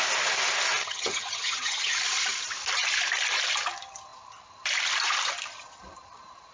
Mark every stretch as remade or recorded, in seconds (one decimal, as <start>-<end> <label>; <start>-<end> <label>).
0.0-0.8 recorded; 0.8-2.0 remade; 2.0-6.5 recorded